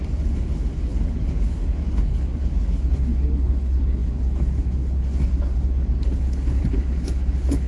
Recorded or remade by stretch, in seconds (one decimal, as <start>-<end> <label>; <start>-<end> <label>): 0.0-7.7 remade